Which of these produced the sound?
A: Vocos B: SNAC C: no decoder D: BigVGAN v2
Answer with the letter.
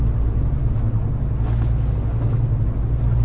C